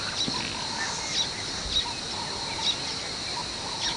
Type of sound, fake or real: real